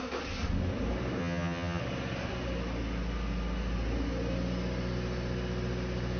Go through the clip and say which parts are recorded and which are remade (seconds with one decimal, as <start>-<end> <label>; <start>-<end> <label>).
0.0-1.2 recorded; 1.2-1.8 remade; 1.8-6.2 recorded